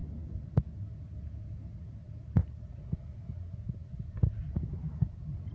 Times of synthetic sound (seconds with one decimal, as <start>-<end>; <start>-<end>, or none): none